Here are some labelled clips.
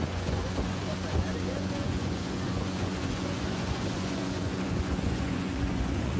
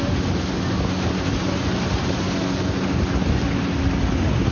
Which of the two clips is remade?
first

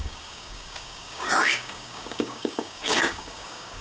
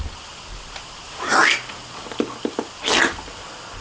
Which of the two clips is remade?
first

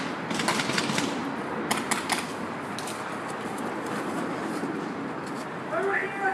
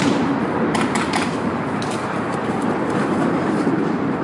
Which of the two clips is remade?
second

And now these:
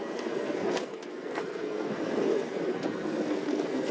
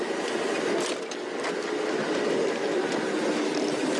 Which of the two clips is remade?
first